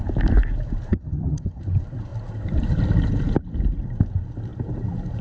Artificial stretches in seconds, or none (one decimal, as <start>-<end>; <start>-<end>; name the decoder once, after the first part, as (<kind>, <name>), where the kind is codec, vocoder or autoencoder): 0.9-1.6 (vocoder, HiFi-GAN)